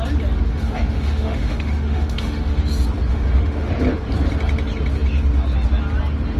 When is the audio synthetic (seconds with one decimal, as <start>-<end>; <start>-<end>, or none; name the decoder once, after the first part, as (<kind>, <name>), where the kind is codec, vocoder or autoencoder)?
0.5-2.6 (autoencoder, DAC-VAE); 3.1-3.7